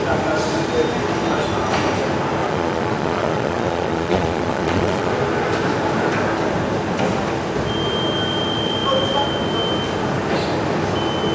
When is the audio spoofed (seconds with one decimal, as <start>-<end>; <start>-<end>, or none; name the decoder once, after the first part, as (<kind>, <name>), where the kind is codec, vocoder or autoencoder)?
2.4-5.1 (vocoder, Vocos)